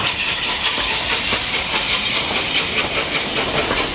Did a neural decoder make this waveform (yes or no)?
no